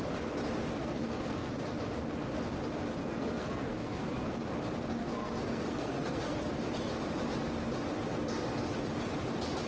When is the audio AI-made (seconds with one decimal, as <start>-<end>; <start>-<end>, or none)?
0.8-1.5; 3.0-4.4; 5.0-6.4